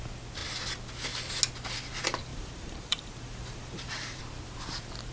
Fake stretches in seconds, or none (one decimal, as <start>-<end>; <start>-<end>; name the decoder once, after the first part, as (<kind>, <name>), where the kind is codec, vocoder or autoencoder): 2.3-4.2 (vocoder, BigVGAN v2)